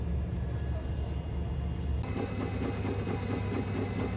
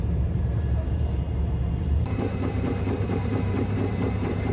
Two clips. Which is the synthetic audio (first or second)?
second